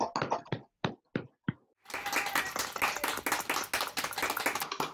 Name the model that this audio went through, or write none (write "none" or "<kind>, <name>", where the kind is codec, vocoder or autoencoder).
none